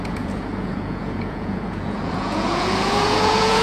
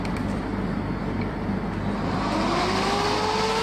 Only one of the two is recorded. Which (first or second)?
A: second